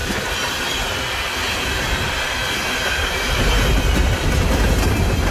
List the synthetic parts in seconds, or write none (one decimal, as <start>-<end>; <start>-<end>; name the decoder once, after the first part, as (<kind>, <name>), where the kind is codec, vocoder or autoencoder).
none